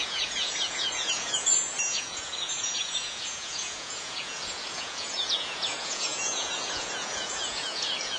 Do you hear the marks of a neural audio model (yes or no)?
yes